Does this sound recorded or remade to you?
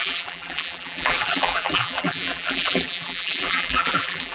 remade